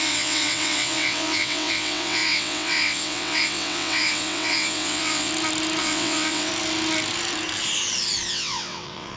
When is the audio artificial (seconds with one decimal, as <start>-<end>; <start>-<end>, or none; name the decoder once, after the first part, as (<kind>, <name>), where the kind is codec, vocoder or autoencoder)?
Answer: 0.0-5.3 (vocoder, WaveNeXt); 5.8-6.5; 8.3-9.2